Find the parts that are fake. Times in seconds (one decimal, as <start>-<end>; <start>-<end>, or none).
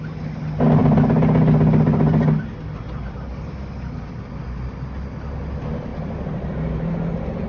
none